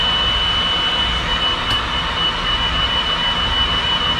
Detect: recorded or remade recorded